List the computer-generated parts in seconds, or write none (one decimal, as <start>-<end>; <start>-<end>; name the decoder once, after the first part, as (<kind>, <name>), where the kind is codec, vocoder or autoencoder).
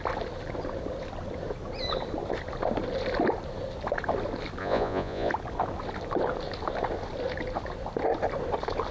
4.6-5.3 (vocoder, Vocos)